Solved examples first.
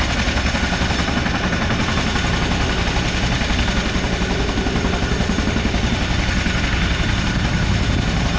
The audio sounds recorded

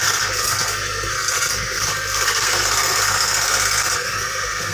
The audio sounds remade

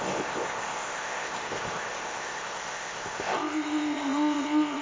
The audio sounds remade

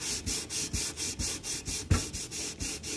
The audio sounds recorded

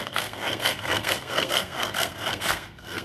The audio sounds remade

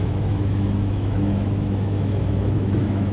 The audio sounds remade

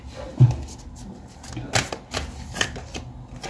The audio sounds recorded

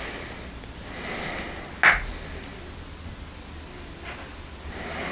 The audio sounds recorded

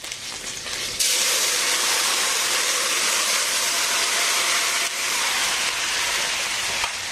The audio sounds remade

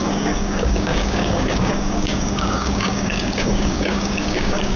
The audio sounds remade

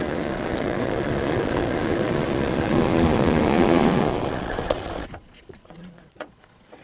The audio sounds remade